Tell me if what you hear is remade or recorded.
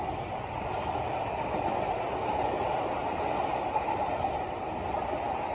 recorded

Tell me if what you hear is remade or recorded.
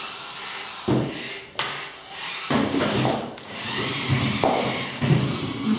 recorded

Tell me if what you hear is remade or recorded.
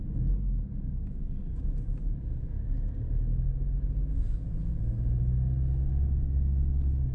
recorded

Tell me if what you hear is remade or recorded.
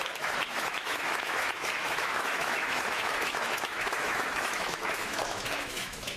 remade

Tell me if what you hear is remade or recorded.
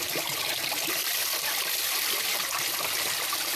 recorded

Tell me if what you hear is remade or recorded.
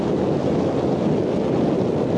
recorded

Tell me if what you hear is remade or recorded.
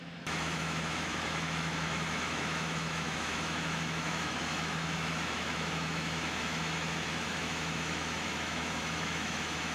remade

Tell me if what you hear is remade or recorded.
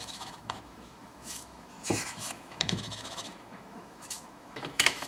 remade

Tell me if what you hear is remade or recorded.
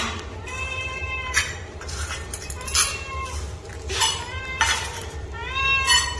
recorded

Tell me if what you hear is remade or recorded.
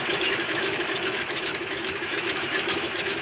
remade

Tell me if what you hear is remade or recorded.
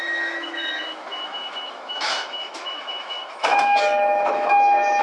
remade